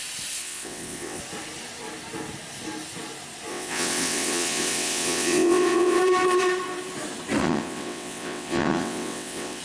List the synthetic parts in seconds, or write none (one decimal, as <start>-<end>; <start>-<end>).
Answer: 0.4-1.2; 3.5-6.0; 7.4-9.6